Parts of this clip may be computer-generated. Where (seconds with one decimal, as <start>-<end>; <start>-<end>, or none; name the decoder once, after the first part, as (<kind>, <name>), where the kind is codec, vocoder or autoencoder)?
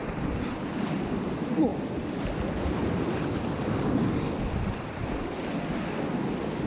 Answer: 0.0-0.8 (vocoder, BigVGAN v2)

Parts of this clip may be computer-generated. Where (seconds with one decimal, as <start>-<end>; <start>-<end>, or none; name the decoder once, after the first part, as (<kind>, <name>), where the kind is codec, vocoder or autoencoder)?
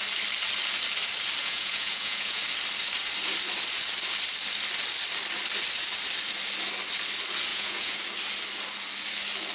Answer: 1.4-2.4 (vocoder, Vocos); 7.5-8.0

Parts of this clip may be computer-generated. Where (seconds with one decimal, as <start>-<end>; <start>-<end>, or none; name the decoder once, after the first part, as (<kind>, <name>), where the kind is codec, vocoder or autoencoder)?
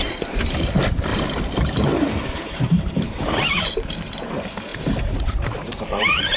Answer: 0.0-1.1 (vocoder, BigVGAN v2); 1.6-6.4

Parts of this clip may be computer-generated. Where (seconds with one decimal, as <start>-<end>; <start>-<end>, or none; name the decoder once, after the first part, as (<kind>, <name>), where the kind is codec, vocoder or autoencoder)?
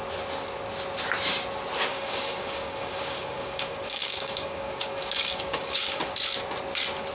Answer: 1.9-6.0 (codec, DAC)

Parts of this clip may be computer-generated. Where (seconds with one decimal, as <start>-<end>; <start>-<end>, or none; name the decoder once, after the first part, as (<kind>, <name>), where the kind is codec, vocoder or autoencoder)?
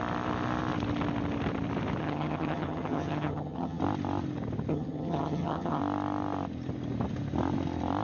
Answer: 2.0-3.8 (vocoder, HiFi-GAN); 4.7-5.8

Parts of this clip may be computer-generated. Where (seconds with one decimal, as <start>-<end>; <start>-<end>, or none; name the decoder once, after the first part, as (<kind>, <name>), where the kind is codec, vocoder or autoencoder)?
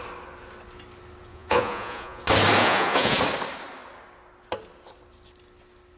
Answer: 1.3-2.2 (vocoder, Vocos); 2.6-3.2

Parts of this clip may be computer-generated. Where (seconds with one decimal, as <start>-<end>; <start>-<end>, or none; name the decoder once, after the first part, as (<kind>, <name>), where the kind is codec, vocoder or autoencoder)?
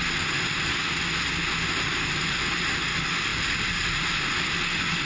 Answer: none